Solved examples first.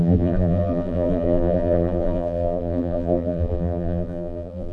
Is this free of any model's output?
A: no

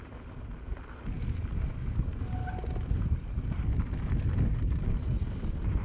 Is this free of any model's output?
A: yes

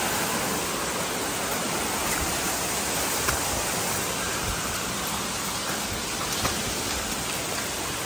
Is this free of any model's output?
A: yes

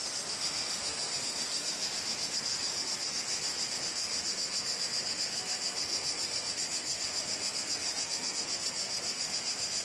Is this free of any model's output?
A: no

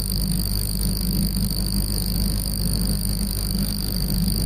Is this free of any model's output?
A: no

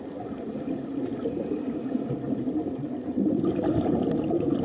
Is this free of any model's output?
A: yes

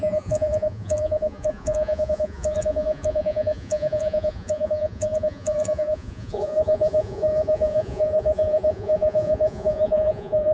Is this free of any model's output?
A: no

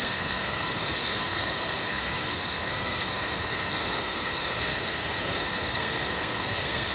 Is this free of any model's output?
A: no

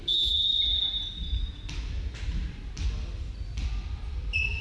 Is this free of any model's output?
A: yes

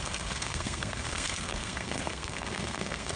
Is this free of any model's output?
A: no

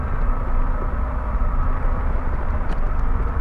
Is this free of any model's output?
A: yes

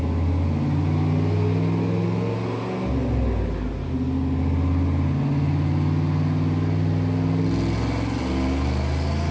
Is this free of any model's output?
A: yes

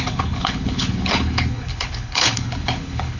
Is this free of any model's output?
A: no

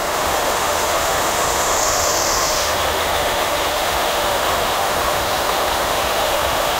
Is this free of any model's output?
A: no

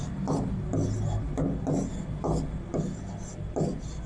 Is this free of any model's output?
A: yes